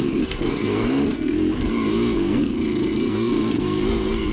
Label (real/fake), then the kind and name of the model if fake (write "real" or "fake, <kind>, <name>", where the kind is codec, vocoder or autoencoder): fake, codec, SNAC